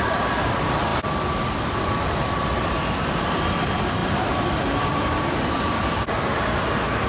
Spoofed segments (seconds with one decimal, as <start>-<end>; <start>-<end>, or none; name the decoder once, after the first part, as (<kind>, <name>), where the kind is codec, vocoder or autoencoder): 0.0-7.1 (vocoder, BigVGAN v2)